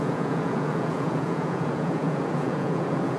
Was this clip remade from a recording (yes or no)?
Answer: yes